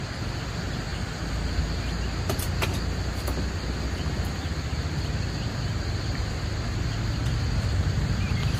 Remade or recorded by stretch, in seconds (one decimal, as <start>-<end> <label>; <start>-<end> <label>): 0.0-8.6 recorded